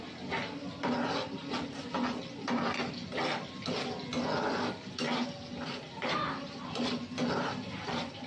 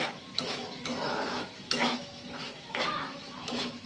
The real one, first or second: first